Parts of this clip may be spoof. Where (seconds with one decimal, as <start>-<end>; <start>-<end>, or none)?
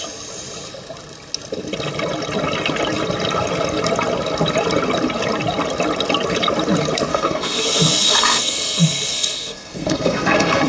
7.1-10.7